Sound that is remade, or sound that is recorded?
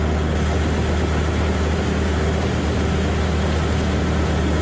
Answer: recorded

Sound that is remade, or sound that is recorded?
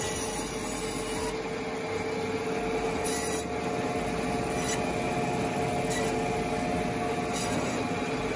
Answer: recorded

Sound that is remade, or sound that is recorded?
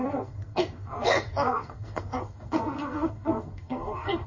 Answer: remade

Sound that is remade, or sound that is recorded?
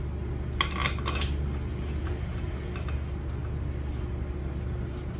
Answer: recorded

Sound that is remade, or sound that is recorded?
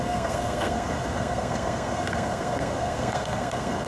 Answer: remade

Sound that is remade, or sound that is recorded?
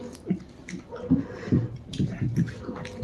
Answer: recorded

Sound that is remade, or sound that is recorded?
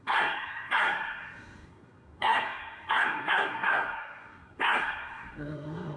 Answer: remade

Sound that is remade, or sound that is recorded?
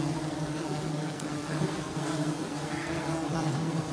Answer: remade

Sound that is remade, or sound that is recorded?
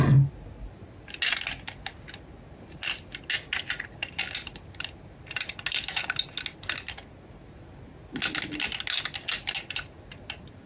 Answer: recorded